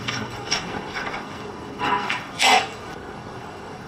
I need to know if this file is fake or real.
fake